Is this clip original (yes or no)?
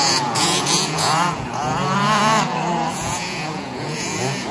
no